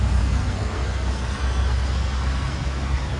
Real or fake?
fake